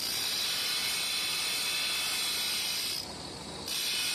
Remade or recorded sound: recorded